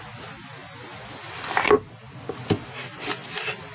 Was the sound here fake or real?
real